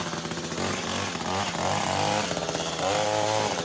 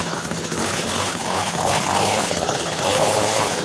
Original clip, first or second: first